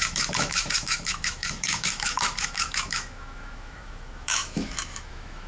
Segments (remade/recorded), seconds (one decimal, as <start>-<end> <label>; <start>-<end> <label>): 0.0-5.5 remade